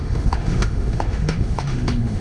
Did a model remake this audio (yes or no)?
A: yes